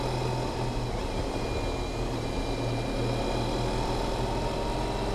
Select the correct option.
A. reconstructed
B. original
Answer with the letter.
B